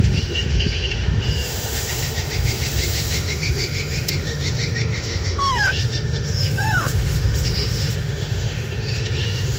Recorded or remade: remade